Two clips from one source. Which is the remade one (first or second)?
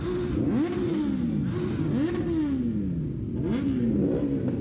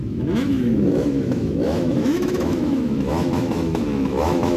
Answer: second